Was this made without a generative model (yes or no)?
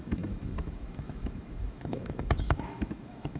no